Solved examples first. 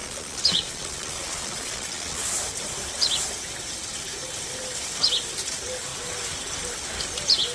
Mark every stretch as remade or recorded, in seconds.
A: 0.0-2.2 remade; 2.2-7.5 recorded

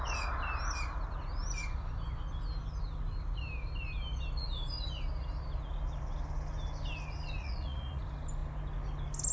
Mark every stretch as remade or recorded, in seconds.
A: 0.0-7.4 recorded; 7.4-8.0 remade; 8.0-9.3 recorded

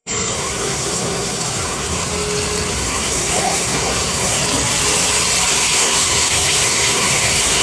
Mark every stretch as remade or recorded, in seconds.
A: 0.0-2.0 remade; 2.0-2.7 recorded; 2.7-4.4 remade; 4.4-5.5 recorded; 5.5-7.6 remade

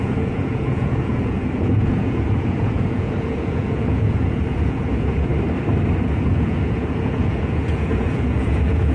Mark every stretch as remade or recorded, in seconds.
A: 0.0-5.3 remade; 5.3-6.0 recorded; 6.0-8.9 remade

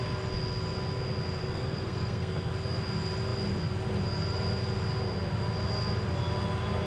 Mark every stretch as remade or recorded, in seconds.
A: 0.0-1.4 recorded; 1.4-2.5 remade; 2.5-6.9 recorded

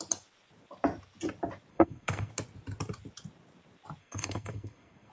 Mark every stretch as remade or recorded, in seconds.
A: 0.0-1.7 recorded; 1.7-2.3 remade; 2.3-4.0 recorded; 4.0-5.1 remade

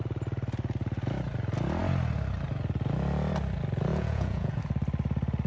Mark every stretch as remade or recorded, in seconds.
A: 0.0-3.9 recorded; 3.9-4.6 remade; 4.6-5.5 recorded